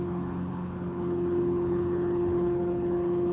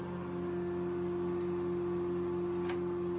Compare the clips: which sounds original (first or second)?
second